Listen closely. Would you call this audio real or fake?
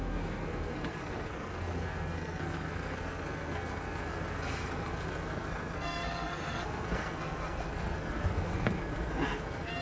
fake